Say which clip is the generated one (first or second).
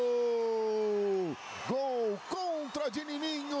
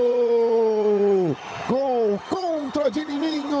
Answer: second